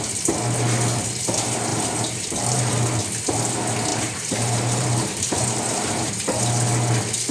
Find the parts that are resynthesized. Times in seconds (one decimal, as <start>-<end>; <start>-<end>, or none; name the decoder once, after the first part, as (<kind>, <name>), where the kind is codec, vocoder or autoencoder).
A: 1.7-2.7 (vocoder, BigVGAN v2); 3.9-6.1